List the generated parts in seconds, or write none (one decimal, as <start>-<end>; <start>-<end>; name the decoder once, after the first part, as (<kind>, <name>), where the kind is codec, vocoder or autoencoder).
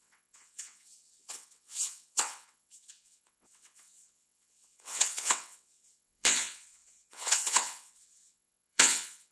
0.0-9.3 (vocoder, WaveNeXt)